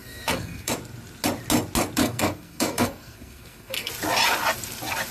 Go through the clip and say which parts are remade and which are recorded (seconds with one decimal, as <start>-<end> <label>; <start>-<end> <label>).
0.0-0.7 remade; 0.7-2.0 recorded; 2.0-3.9 remade; 3.9-5.1 recorded